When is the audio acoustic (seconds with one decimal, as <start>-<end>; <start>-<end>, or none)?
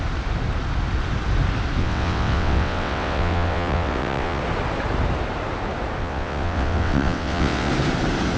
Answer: 0.0-1.8; 4.4-6.0; 7.7-8.4